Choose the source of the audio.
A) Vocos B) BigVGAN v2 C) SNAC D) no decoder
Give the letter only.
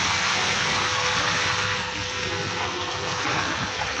C